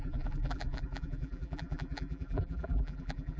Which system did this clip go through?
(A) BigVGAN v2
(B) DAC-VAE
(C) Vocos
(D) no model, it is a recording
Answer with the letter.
A